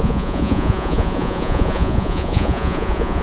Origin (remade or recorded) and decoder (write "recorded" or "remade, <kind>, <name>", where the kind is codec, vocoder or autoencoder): remade, vocoder, Vocos